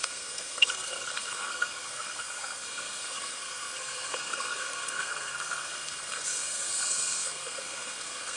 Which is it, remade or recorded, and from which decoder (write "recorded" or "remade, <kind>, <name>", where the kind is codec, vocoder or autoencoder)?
remade, codec, SNAC